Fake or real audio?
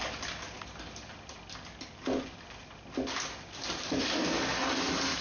real